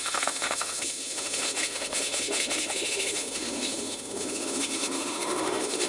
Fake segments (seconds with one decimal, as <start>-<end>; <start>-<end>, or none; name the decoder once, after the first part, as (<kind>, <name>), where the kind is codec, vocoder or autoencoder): 0.0-5.9 (autoencoder, DAC-VAE)